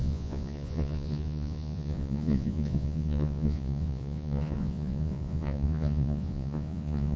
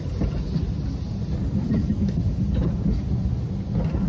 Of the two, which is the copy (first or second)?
first